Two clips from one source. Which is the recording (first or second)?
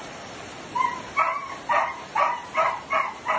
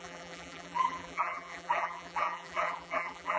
first